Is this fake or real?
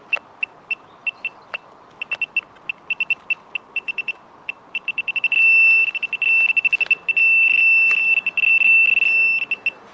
real